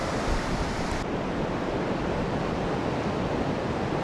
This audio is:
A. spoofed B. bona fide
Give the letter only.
B